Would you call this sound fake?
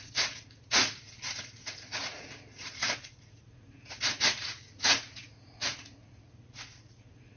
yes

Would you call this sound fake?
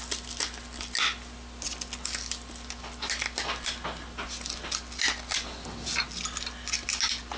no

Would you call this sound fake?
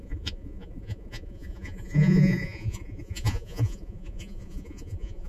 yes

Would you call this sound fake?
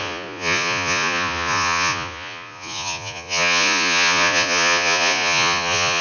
yes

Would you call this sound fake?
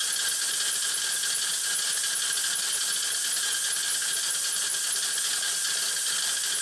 no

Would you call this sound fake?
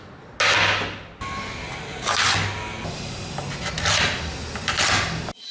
no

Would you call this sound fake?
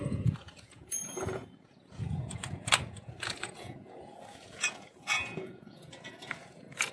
yes